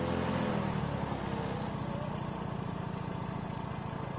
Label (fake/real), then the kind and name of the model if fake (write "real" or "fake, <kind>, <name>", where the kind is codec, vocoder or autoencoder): real